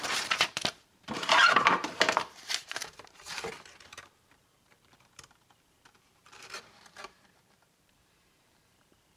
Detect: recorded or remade remade